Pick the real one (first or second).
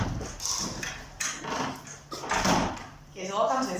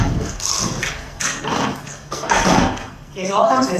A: first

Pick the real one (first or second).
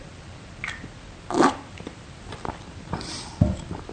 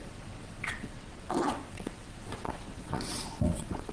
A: first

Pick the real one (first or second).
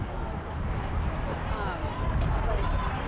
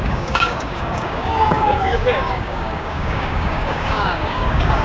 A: first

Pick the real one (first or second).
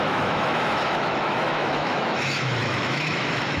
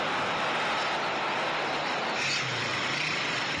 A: second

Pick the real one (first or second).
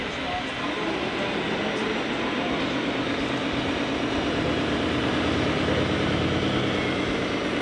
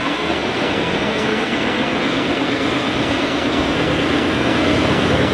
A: first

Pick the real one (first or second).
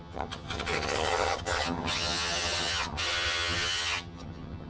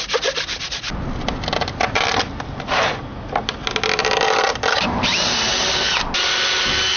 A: second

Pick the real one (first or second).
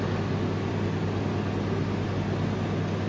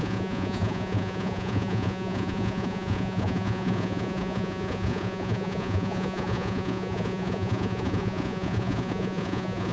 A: first